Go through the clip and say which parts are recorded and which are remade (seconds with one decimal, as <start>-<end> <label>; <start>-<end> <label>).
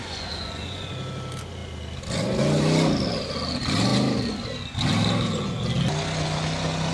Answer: 0.0-0.9 remade; 0.9-6.9 recorded